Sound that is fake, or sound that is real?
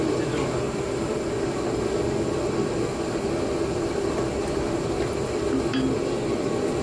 real